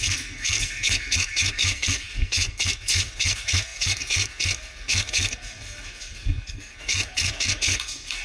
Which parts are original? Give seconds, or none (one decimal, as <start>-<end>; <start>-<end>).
none